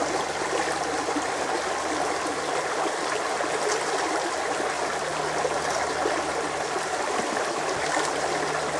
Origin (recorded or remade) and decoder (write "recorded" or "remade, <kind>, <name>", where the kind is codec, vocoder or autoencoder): recorded